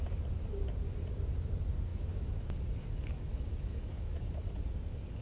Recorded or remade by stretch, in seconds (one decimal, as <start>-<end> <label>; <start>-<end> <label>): 0.0-1.9 recorded; 1.9-2.5 remade; 2.5-3.7 recorded; 3.7-4.3 remade; 4.3-5.2 recorded